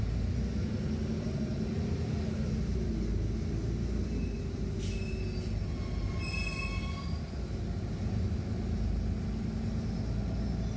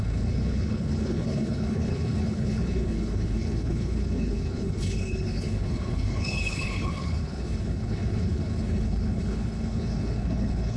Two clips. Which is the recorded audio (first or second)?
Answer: first